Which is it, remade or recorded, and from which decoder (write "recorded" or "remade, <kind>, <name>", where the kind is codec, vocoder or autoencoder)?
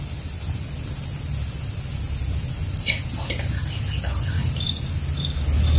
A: recorded